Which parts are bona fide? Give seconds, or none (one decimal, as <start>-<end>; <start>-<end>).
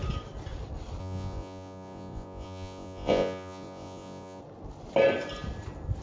0.0-1.0; 4.4-6.0